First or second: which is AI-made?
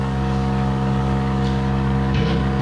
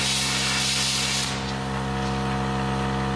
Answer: first